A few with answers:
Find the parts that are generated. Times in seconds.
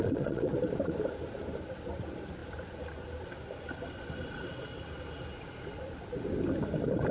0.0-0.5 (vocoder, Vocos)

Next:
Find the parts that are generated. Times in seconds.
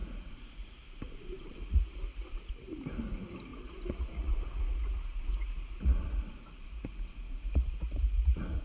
0.0-2.5 (vocoder, Vocos); 3.5-8.6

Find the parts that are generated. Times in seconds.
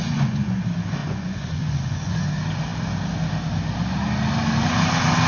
0.0-0.6 (vocoder, Vocos); 1.0-2.2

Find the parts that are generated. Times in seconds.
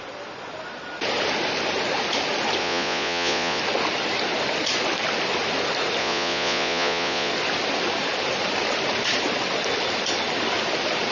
2.6-3.6 (vocoder, Vocos); 6.0-7.3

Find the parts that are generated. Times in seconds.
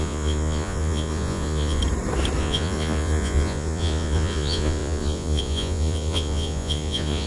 0.0-1.8 (vocoder, Vocos); 2.4-7.3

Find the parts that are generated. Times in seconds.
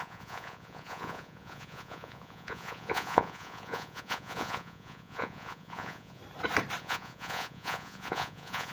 0.0-6.2 (vocoder, Vocos); 6.8-8.7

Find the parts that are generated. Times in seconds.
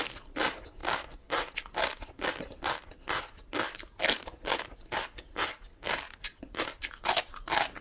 none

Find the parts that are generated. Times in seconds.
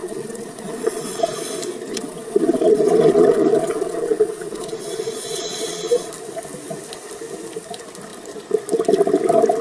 0.0-1.5 (vocoder, Vocos); 1.9-6.1